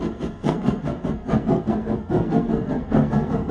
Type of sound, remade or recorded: remade